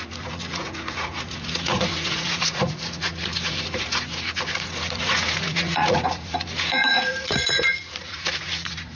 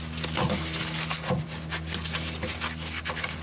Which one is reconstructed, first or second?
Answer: first